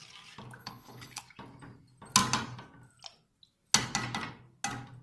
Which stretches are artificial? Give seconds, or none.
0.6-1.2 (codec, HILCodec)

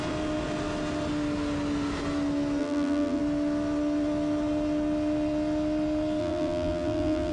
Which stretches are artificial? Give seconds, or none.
2.6-3.2 (vocoder, BigVGAN v2); 6.2-7.3

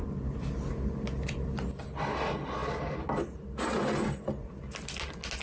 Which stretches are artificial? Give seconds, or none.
none